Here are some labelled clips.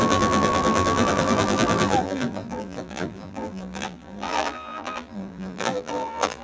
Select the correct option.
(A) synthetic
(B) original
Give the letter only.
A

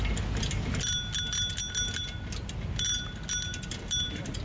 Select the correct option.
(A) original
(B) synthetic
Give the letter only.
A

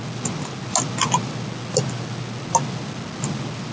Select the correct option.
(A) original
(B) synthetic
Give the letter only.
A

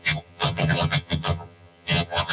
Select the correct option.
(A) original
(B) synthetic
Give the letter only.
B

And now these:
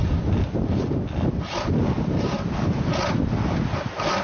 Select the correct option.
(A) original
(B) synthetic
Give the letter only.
A